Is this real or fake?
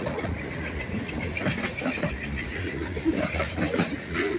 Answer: fake